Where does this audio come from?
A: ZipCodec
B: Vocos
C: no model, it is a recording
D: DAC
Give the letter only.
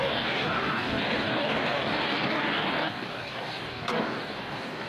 D